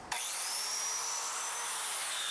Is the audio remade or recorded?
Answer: remade